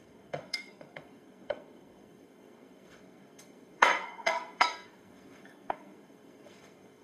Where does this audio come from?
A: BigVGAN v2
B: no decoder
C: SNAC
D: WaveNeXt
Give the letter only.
C